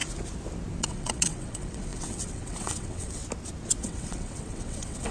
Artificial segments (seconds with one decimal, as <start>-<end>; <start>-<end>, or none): 0.8-3.2; 3.8-5.1